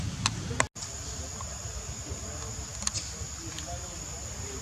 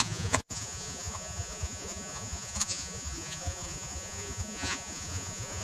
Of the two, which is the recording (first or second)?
first